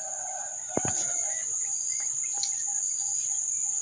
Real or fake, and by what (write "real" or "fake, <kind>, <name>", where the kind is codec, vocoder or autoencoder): real